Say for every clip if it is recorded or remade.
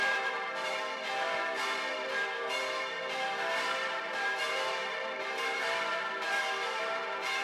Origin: remade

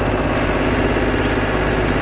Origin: recorded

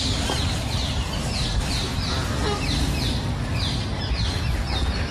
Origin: recorded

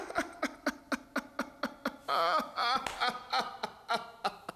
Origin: recorded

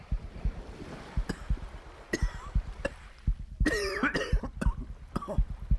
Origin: recorded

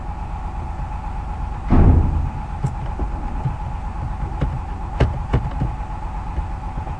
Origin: recorded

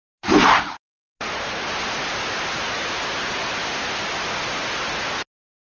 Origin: recorded